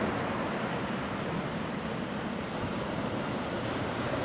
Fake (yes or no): no